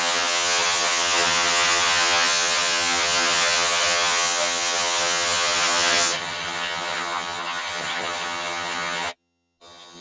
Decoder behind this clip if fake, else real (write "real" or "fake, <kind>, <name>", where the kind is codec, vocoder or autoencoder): fake, vocoder, HiFi-GAN